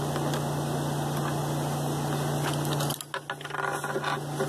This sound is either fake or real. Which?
real